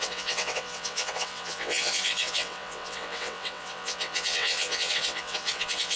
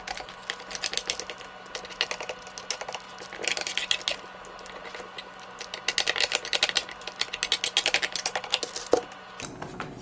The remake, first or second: first